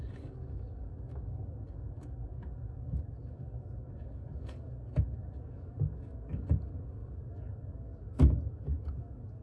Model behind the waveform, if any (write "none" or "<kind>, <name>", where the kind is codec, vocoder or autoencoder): codec, DAC